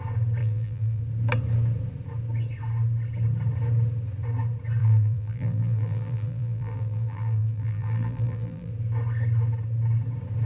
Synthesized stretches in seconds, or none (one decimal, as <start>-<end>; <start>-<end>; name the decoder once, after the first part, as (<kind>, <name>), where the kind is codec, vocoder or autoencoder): 0.4-1.0 (vocoder, BigVGAN v2); 4.8-8.7